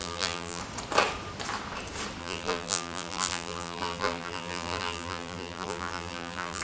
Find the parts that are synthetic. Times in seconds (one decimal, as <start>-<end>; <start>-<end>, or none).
0.0-0.6; 2.2-6.6